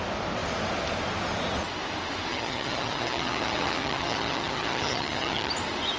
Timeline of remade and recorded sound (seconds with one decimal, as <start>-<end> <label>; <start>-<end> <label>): 0.0-2.3 recorded; 2.3-5.5 remade; 5.5-6.0 recorded